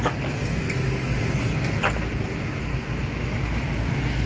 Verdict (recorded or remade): recorded